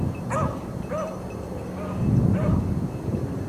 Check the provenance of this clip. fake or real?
real